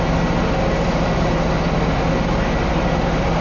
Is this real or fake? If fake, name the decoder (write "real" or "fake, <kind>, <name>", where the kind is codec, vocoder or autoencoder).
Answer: real